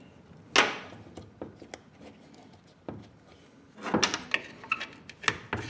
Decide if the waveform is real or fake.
real